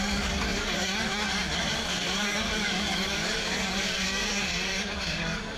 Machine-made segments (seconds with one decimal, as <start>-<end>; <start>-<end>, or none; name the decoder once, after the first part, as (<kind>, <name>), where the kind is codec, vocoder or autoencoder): 0.0-5.6 (codec, DAC)